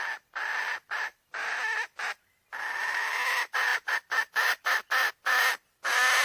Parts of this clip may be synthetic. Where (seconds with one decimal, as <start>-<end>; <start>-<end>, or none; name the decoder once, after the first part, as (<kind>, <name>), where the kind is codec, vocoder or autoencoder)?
1.1-2.4 (vocoder, BigVGAN v2); 3.7-5.1